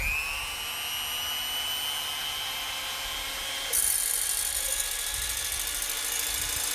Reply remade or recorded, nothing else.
recorded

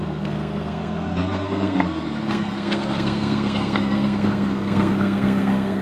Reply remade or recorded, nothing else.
remade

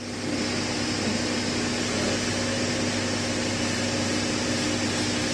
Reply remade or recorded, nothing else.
recorded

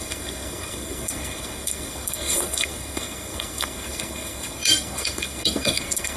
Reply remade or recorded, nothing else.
remade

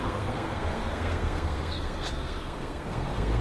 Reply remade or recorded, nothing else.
remade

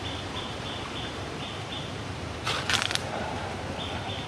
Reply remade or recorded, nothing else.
remade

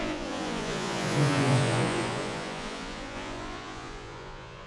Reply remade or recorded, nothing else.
remade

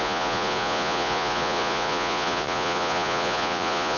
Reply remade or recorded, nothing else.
remade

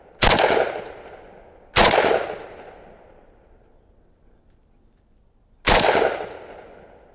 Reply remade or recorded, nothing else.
recorded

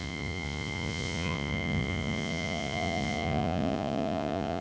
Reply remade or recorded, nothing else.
remade